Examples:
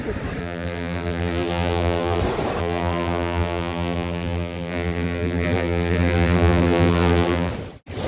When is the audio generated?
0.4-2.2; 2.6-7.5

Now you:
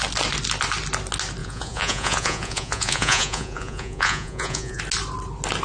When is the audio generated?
1.4-4.8

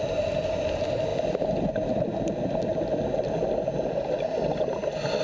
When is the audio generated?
none

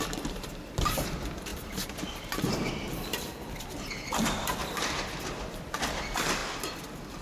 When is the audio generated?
1.5-4.8

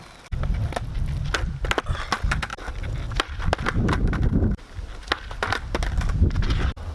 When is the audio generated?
2.5-5.7